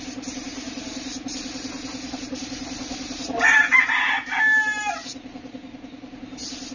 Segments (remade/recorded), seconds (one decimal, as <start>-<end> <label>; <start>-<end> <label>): 0.0-6.7 recorded